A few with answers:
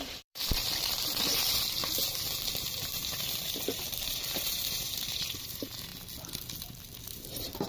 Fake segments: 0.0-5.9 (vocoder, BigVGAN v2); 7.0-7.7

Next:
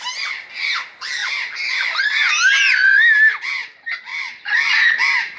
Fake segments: 1.2-2.0 (vocoder, BigVGAN v2); 4.1-5.4

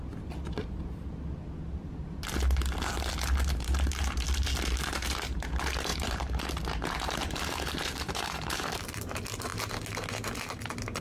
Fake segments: 5.9-9.0 (vocoder, BigVGAN v2)

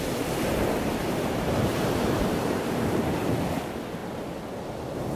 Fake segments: 1.0-3.2 (vocoder, BigVGAN v2)

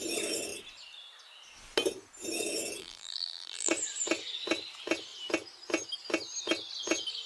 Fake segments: 2.8-3.7 (vocoder, BigVGAN v2)

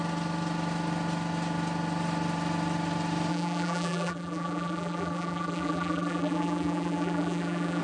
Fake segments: 3.3-7.8 (vocoder, BigVGAN v2)

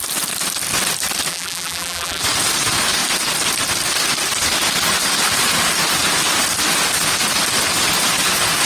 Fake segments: 1.3-2.2 (vocoder, BigVGAN v2)

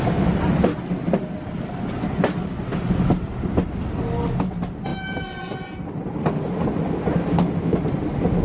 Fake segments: 4.9-5.8 (vocoder, BigVGAN v2)